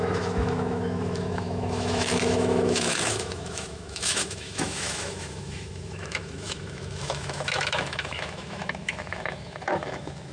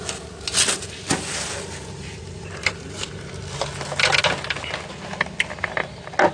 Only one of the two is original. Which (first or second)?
second